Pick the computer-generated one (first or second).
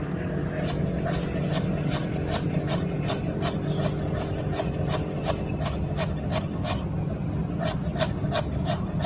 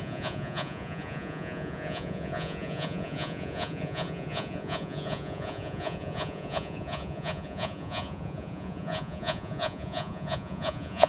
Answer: second